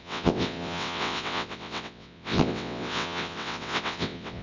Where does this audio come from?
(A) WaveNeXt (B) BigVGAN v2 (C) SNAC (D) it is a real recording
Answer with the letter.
A